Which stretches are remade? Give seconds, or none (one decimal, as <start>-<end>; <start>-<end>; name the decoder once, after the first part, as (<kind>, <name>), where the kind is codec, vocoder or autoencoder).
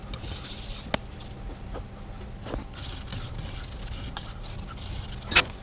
none